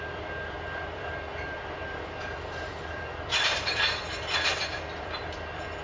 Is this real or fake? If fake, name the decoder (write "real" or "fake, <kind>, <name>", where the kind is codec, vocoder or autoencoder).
fake, vocoder, BigVGAN v2